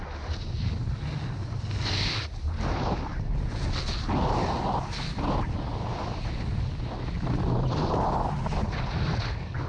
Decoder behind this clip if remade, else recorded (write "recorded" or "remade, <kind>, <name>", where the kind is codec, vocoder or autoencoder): recorded